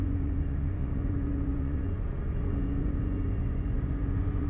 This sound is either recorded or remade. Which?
remade